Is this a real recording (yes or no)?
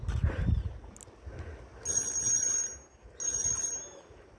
yes